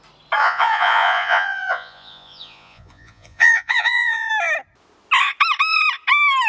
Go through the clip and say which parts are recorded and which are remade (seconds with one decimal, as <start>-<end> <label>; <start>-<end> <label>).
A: 0.0-0.4 recorded; 0.4-4.3 remade; 4.3-6.5 recorded